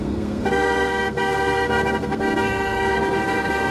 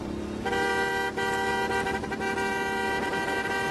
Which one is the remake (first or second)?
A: first